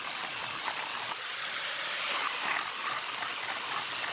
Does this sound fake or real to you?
real